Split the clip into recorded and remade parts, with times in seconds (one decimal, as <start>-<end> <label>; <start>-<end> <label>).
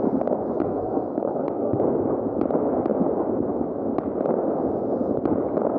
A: 0.0-0.6 recorded; 0.6-1.8 remade; 1.8-5.8 recorded